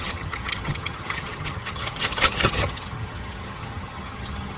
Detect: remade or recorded remade